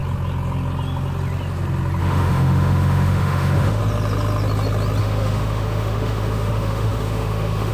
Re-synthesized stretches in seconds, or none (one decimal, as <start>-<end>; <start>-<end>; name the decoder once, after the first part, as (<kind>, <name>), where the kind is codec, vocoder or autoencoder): 2.0-3.8 (autoencoder, DAC-VAE); 5.0-7.7